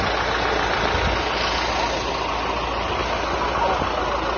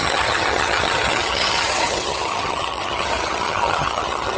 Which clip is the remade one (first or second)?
second